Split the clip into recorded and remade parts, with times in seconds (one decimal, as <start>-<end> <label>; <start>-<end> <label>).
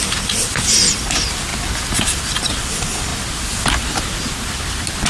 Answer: 0.0-5.1 recorded